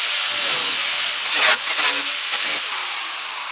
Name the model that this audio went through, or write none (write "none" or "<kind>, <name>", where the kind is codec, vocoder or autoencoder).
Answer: none